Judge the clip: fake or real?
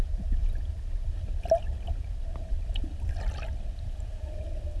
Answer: fake